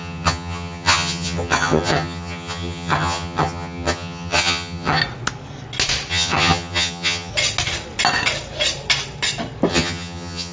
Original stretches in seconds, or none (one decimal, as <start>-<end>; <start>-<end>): 5.0-6.1; 7.3-9.7